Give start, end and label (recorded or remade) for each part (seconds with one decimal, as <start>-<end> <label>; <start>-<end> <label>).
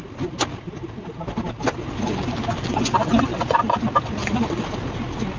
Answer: 0.0-5.4 recorded